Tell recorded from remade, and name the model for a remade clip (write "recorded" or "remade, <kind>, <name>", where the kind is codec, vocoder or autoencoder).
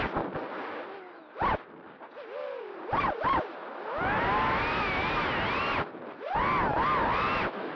recorded